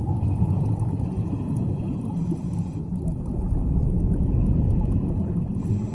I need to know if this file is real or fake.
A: fake